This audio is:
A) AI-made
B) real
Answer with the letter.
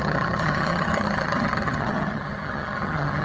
A